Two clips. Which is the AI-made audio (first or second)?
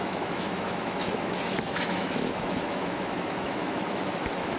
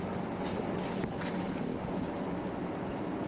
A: first